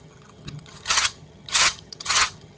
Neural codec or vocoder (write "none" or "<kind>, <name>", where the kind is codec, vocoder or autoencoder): vocoder, HiFi-GAN